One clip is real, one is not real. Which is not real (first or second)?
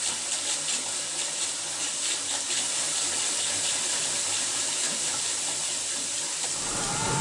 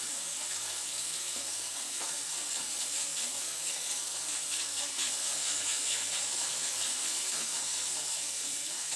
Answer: second